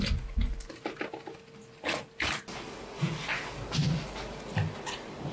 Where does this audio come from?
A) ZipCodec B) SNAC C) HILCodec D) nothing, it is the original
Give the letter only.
D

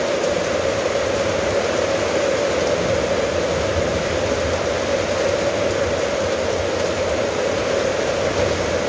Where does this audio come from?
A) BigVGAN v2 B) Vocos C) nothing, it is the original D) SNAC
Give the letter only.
C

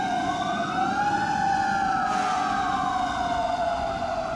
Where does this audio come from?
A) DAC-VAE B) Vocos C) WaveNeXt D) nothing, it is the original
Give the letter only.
B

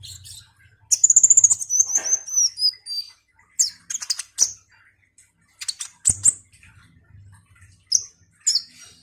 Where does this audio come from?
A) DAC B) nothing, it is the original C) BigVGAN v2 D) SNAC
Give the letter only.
B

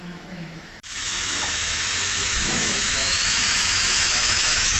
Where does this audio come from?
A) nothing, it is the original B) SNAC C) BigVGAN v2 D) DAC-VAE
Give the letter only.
D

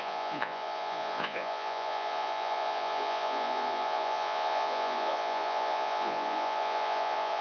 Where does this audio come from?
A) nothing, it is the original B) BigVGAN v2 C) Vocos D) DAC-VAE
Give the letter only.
C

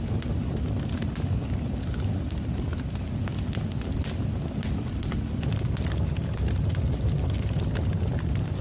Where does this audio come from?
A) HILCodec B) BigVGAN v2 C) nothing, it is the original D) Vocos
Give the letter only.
C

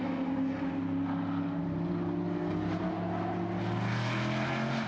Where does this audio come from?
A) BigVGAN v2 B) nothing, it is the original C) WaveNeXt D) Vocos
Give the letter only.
B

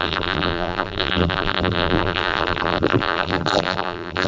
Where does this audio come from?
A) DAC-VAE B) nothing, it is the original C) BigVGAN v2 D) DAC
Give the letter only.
C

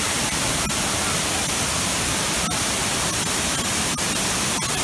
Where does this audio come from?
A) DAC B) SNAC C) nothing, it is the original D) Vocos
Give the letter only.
C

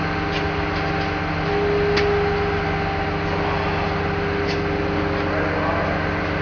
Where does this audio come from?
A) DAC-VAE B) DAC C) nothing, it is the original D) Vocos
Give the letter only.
C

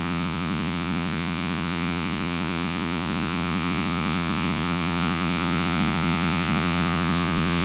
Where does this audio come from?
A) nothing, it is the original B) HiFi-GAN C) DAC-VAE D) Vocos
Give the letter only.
D